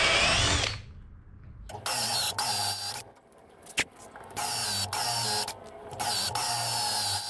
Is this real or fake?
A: real